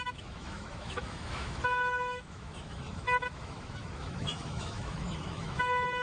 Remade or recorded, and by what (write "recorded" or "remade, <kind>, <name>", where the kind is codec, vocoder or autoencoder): remade, autoencoder, DAC-VAE